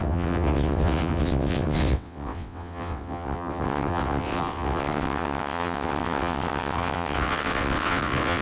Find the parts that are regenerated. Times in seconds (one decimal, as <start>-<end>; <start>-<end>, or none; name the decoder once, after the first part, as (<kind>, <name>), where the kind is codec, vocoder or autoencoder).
0.0-8.4 (vocoder, WaveNeXt)